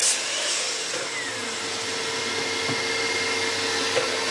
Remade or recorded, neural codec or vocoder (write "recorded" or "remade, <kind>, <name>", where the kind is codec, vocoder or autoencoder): recorded